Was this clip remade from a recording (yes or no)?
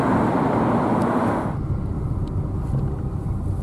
yes